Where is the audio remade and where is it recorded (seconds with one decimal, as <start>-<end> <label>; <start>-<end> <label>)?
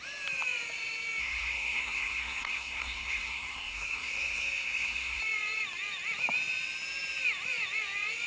0.0-1.2 recorded; 1.2-5.2 remade; 5.2-8.3 recorded